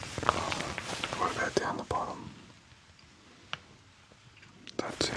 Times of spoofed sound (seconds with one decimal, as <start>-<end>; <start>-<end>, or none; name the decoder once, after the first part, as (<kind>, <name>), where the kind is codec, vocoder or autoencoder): 0.0-1.4 (vocoder, Vocos); 4.2-5.2